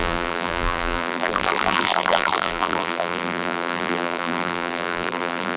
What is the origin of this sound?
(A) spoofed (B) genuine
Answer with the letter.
A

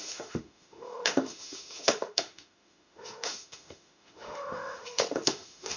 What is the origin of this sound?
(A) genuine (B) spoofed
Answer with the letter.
B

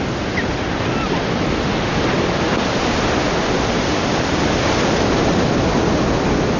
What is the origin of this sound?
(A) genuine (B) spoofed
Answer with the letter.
A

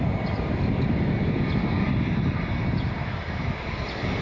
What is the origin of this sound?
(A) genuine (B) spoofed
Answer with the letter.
A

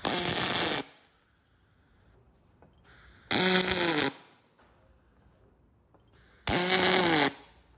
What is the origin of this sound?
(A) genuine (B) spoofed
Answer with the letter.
A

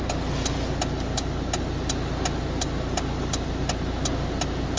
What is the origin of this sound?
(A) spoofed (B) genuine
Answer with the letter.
B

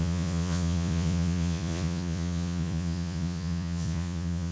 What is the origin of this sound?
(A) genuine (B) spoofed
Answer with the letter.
B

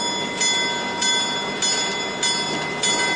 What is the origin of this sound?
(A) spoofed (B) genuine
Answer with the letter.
B